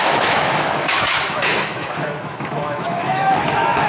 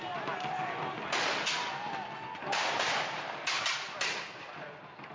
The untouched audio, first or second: second